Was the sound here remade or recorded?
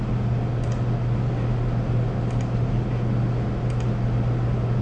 recorded